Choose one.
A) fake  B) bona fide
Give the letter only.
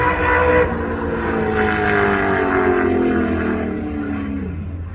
B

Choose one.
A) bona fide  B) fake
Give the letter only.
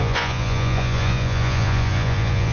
B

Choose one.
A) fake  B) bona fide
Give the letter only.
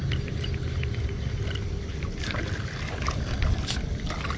B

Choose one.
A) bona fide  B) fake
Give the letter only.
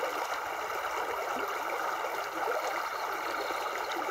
A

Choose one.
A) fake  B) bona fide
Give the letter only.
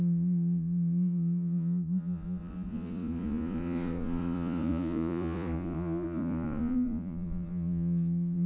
A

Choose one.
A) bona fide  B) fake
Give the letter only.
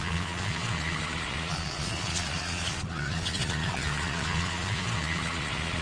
B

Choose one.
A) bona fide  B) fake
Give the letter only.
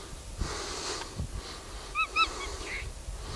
A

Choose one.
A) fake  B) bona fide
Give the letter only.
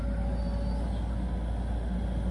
B